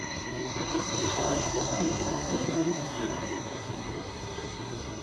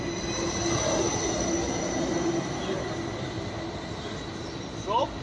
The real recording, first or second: second